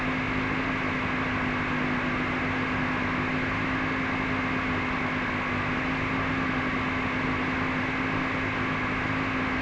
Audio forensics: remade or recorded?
recorded